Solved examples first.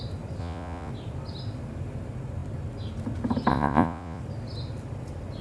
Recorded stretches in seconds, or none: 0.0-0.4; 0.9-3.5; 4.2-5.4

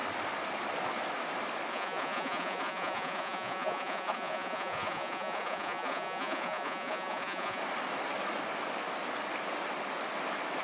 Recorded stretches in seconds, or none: 0.0-1.7; 7.6-10.6

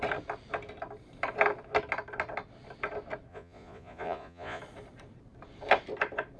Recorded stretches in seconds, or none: 0.0-3.3; 4.6-6.4

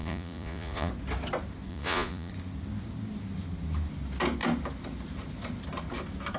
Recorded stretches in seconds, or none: 0.9-1.7; 2.3-6.4

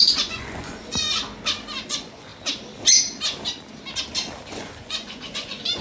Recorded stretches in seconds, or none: 1.2-1.9; 2.3-4.5

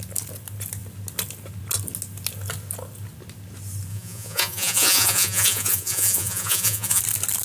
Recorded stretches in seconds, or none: 0.0-3.9; 7.0-7.4

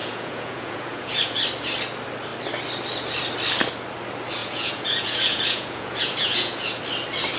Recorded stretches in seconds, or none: 1.4-4.4; 6.8-7.4

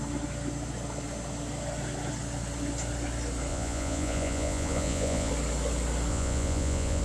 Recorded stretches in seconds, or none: 0.0-3.5; 5.3-6.1